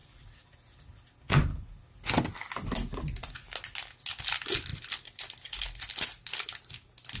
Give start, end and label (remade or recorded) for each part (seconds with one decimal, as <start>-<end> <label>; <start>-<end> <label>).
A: 0.0-7.2 recorded